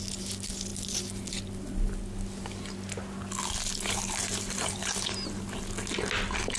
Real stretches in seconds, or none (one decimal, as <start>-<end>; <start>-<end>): 0.0-6.6